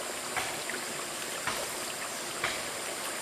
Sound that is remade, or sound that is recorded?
recorded